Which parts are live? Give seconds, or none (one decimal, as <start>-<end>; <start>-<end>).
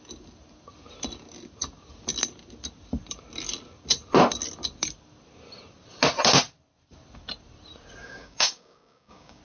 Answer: 0.0-8.0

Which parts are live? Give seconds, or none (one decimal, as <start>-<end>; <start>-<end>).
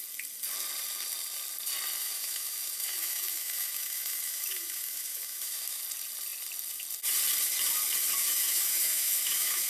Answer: 0.0-2.0; 5.8-8.2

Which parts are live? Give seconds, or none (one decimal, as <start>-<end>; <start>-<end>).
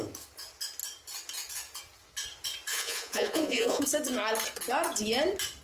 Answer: 0.0-2.7; 3.8-5.6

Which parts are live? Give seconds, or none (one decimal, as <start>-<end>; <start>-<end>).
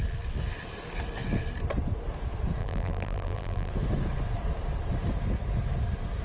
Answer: 0.0-2.6; 3.7-6.2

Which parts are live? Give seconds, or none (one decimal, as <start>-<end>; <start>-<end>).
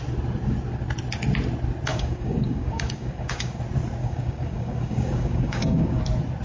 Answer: 0.0-1.9; 3.6-4.0; 6.0-6.4